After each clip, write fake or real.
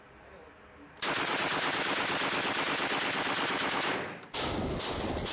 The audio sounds real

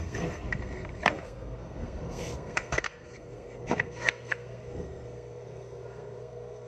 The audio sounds fake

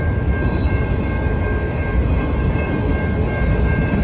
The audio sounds real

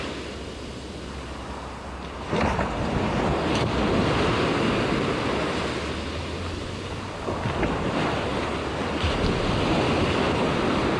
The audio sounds real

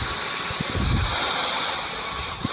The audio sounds real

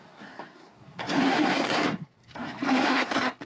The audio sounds fake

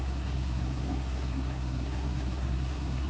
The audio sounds fake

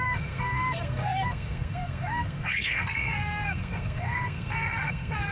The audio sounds fake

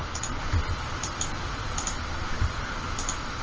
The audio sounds real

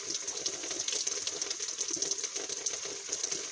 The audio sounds real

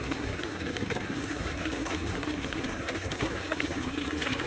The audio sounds fake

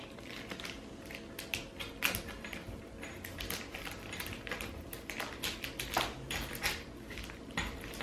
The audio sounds real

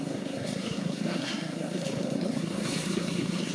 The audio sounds fake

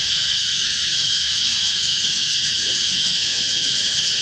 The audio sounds fake